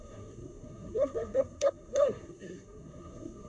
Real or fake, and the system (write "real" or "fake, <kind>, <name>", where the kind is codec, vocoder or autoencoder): fake, codec, SNAC